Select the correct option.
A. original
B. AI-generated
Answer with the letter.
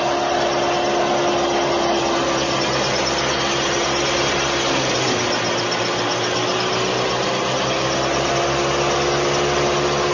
A